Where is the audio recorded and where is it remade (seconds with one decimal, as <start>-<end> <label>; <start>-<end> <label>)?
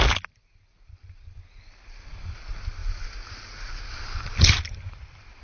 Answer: 0.0-5.4 recorded